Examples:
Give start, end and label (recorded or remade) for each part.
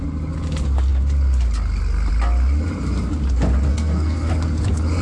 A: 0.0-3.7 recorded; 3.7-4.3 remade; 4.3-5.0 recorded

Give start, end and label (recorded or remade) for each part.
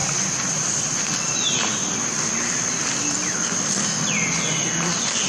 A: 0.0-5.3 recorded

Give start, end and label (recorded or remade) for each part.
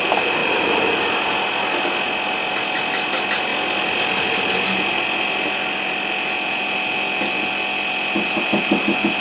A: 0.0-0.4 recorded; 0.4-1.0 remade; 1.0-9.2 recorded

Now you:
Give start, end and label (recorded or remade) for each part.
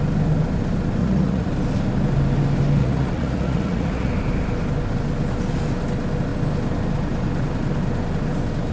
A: 0.0-1.0 recorded; 1.0-1.5 remade; 1.5-2.8 recorded; 2.8-4.1 remade; 4.1-8.7 recorded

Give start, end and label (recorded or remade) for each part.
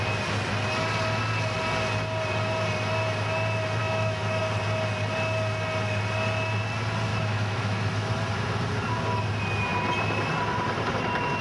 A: 0.0-3.8 recorded; 3.8-4.4 remade; 4.4-7.1 recorded; 7.1-8.1 remade; 8.1-11.4 recorded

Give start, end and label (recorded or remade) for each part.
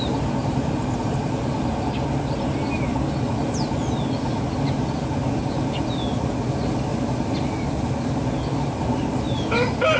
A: 0.0-10.0 recorded